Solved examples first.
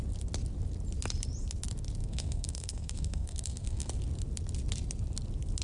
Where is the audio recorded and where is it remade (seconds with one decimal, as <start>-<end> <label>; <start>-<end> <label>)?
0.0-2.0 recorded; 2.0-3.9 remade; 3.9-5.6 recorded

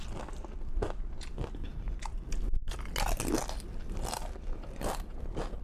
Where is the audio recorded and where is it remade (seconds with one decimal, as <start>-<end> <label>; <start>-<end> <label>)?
0.0-5.6 recorded

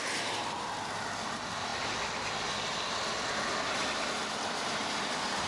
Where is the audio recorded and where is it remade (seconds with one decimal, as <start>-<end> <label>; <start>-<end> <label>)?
0.0-5.5 recorded

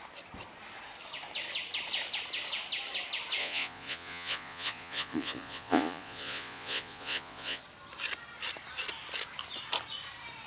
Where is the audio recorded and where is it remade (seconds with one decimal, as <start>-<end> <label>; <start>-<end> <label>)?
0.0-3.4 recorded; 3.4-7.6 remade; 7.6-10.5 recorded